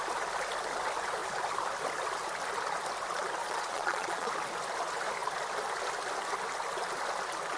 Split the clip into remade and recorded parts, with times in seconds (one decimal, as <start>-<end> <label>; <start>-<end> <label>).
0.0-3.4 recorded; 3.4-4.3 remade; 4.3-7.6 recorded